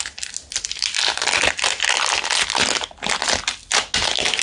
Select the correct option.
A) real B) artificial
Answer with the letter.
A